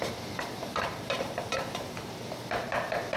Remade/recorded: remade